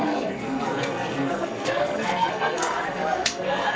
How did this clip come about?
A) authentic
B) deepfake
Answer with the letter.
B